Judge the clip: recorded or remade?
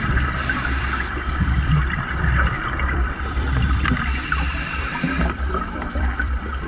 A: remade